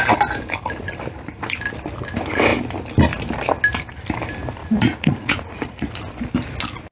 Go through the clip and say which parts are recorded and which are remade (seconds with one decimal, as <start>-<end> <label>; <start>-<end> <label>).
0.0-4.6 recorded; 4.6-6.0 remade; 6.0-6.9 recorded